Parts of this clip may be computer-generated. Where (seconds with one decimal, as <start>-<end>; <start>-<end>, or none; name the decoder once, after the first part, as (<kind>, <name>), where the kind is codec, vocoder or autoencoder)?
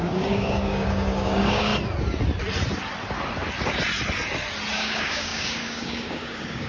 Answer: 0.0-1.7 (codec, DAC); 4.7-6.7